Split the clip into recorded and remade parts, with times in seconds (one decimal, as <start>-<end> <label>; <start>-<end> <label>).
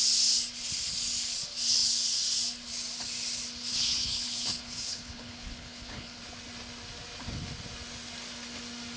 0.0-3.7 recorded; 3.7-6.2 remade; 6.2-9.0 recorded